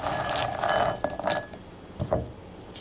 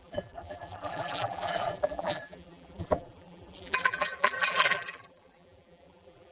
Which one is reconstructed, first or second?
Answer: second